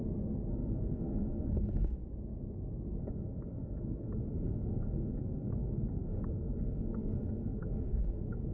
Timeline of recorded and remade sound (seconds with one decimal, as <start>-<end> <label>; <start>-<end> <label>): 0.0-0.5 recorded; 0.5-2.0 remade; 2.0-3.0 recorded; 3.0-8.5 remade